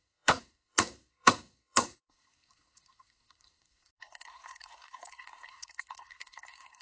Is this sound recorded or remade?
remade